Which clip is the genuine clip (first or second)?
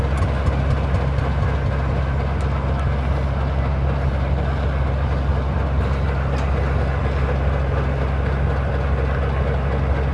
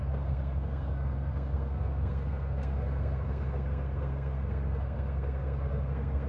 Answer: first